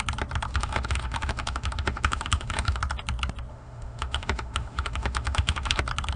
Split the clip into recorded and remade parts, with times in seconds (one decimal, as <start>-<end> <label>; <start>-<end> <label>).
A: 0.0-0.5 recorded; 0.5-2.8 remade; 2.8-3.5 recorded; 3.5-5.8 remade; 5.8-6.2 recorded